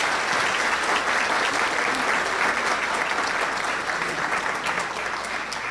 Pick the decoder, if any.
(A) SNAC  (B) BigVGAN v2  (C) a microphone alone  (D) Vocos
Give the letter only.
C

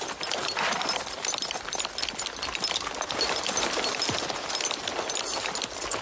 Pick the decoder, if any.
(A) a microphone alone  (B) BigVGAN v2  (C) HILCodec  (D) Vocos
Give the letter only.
A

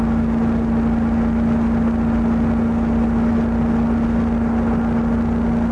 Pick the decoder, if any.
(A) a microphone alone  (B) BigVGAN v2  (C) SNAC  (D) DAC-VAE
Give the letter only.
A